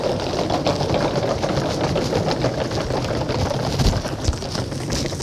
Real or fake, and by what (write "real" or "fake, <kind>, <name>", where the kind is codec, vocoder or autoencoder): real